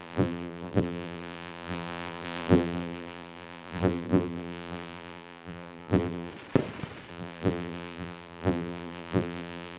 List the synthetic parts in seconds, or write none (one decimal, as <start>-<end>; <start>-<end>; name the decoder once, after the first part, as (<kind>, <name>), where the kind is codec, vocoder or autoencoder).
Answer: 0.0-6.3 (vocoder, BigVGAN v2); 7.1-9.8